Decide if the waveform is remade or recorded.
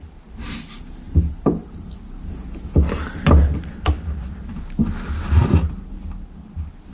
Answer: recorded